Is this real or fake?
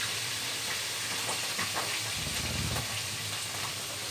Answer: real